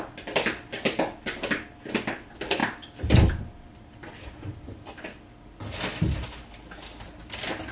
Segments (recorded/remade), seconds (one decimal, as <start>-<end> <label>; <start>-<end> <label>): 0.0-7.7 recorded